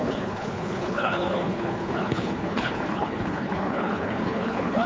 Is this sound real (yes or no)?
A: no